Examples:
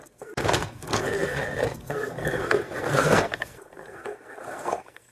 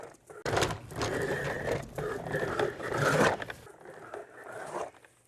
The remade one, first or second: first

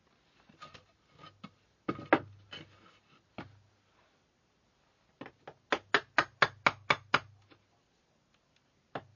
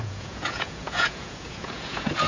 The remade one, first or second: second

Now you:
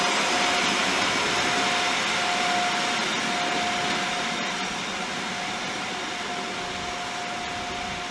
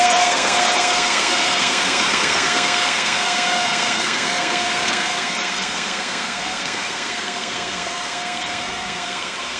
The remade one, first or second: second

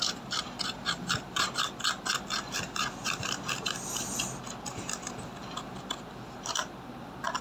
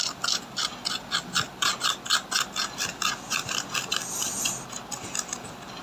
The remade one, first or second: first